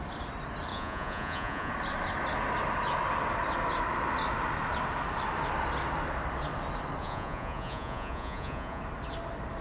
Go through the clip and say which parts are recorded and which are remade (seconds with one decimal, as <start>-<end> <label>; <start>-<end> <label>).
0.0-0.7 recorded; 0.7-1.7 remade; 1.7-7.0 recorded; 7.0-8.8 remade; 8.8-9.6 recorded